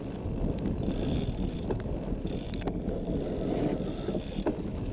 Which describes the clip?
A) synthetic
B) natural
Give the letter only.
B